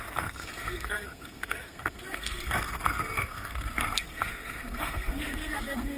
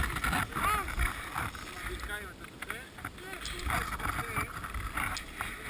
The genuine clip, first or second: second